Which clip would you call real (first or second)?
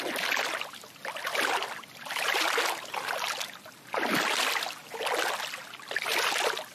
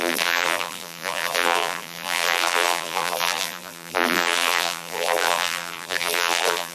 first